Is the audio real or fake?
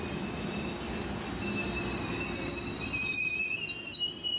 real